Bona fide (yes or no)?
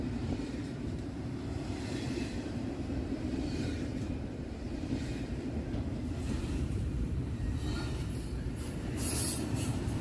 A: no